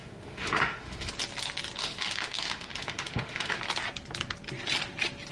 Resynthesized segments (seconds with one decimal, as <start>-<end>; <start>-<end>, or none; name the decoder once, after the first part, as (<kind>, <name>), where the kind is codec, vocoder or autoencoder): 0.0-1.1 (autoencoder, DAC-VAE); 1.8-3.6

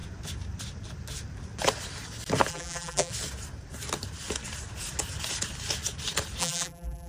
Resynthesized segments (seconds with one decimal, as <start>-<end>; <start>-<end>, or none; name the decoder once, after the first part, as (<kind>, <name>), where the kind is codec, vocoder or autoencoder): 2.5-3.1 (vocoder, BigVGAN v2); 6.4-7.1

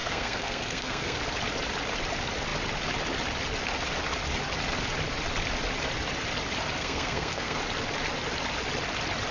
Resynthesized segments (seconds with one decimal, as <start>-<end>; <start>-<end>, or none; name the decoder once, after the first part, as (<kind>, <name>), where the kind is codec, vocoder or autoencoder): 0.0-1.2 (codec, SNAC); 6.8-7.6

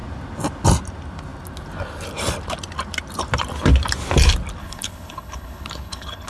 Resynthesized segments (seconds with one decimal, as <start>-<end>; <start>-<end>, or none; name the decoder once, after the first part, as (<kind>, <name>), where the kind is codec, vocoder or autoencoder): 4.6-6.3 (codec, HILCodec)

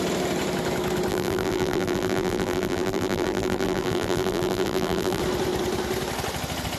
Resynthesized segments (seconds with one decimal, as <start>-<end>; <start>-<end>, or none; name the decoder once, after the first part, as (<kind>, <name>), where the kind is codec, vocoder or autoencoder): 1.1-5.2 (vocoder, BigVGAN v2)

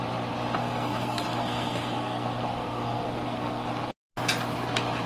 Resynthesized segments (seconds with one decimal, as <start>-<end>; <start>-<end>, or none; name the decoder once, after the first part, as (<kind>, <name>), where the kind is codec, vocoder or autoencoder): 0.6-3.7 (codec, SNAC)

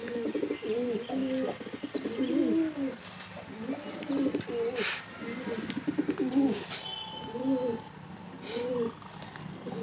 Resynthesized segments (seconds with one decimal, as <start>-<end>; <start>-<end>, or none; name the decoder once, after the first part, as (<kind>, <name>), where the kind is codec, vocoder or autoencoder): none

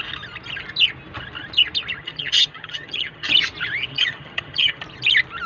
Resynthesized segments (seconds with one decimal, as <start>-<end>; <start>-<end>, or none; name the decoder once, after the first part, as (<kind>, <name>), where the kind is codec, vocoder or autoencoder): 2.0-3.3 (vocoder, HiFi-GAN); 3.9-4.8